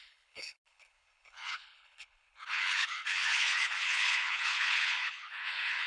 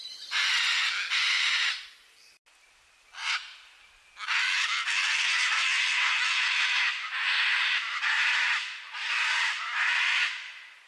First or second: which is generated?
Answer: first